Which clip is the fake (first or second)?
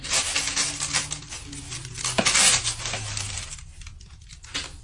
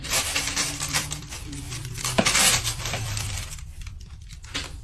second